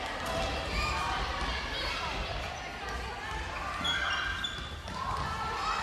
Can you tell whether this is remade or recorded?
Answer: recorded